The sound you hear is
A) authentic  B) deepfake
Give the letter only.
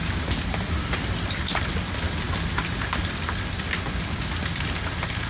A